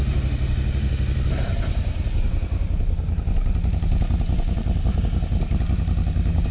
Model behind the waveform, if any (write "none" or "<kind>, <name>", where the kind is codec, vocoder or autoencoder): none